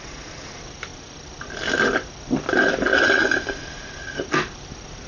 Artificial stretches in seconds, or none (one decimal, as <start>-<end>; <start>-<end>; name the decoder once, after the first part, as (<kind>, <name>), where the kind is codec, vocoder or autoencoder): none